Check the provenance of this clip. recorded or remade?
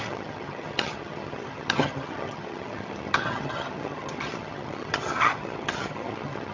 remade